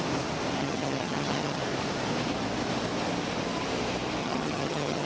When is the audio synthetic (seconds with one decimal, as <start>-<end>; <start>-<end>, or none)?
0.6-1.6; 4.2-5.1